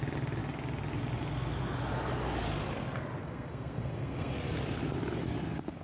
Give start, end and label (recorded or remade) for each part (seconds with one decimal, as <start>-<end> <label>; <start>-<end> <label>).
0.0-3.2 recorded; 3.2-4.3 remade; 4.3-5.8 recorded